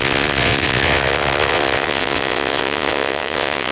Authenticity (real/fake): fake